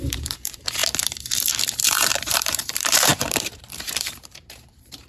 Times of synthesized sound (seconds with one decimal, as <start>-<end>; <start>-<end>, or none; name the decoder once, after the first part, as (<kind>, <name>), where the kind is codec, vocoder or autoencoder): 0.0-0.8 (vocoder, BigVGAN v2); 1.8-5.1